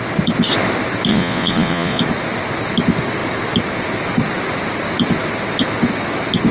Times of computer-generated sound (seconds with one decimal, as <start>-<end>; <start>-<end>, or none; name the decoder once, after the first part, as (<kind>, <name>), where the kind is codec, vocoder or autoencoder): 1.1-2.0 (vocoder, Vocos)